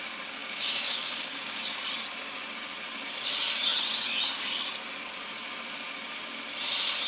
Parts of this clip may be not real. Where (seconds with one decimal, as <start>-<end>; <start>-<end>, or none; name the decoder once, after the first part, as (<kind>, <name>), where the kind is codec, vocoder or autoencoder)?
0.4-1.6 (codec, DAC)